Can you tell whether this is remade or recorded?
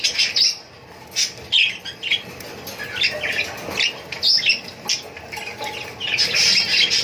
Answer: recorded